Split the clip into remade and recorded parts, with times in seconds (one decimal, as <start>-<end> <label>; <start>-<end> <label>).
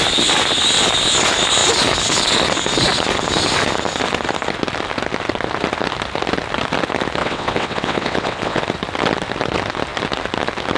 0.0-7.2 recorded; 7.2-8.6 remade; 8.6-10.8 recorded